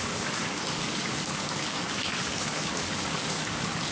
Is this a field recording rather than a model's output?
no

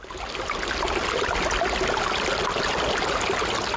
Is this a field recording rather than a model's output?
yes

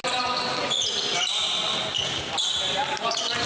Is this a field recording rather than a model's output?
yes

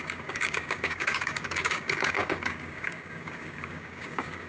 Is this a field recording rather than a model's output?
no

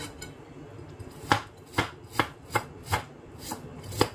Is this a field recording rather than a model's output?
yes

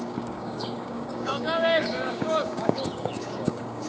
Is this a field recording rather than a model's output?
no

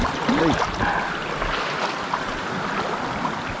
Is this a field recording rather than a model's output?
yes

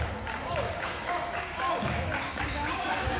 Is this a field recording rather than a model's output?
no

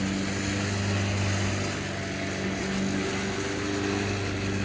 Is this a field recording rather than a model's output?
yes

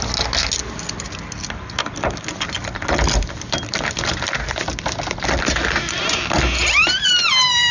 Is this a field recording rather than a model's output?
yes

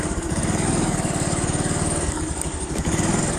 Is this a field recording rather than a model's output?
no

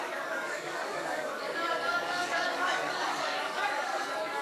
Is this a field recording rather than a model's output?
no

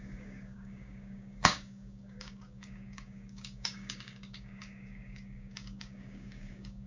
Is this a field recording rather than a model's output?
no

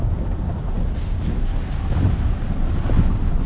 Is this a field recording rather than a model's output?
yes